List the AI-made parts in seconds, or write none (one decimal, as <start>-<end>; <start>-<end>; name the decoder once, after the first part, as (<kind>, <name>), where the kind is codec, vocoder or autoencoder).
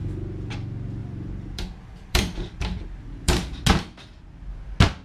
0.0-0.5 (vocoder, BigVGAN v2); 1.0-3.6